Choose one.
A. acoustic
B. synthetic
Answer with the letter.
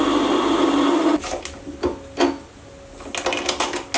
A